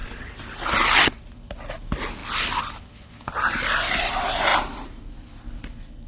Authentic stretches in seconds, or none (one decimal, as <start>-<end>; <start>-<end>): 0.0-4.5; 5.3-6.1